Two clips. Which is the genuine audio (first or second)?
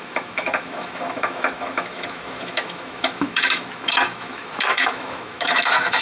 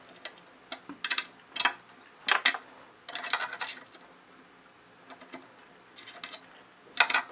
second